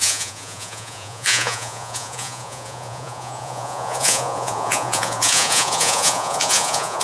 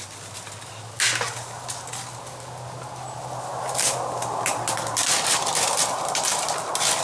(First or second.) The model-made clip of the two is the first